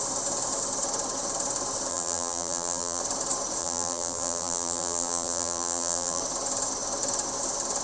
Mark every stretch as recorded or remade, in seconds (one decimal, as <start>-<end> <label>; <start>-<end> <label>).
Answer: 0.0-1.9 recorded; 1.9-3.0 remade; 3.0-3.6 recorded; 3.6-6.2 remade; 6.2-7.8 recorded